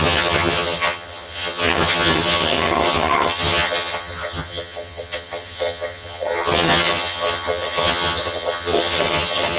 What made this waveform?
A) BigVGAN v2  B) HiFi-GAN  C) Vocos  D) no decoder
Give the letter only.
B